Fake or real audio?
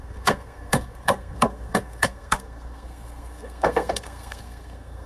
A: fake